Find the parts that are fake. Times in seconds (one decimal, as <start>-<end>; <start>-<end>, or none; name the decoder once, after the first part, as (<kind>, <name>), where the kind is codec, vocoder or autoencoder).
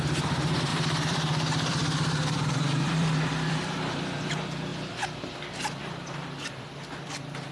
0.0-7.5 (vocoder, BigVGAN v2)